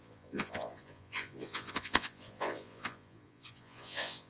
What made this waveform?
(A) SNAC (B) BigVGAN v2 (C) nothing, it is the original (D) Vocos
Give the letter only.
D